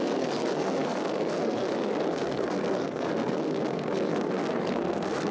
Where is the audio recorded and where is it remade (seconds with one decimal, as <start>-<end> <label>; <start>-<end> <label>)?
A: 0.0-5.3 remade